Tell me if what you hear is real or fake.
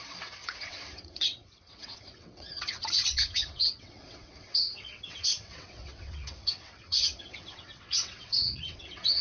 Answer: fake